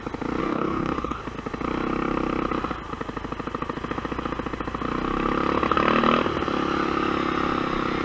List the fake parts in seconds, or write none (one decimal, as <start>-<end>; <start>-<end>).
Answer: 0.4-1.2